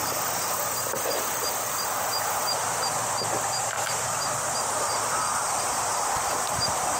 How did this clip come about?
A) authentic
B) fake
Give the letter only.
B